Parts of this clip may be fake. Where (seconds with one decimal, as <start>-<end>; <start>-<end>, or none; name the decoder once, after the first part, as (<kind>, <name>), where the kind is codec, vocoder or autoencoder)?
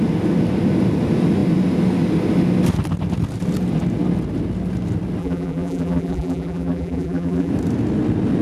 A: 5.2-7.5 (vocoder, BigVGAN v2)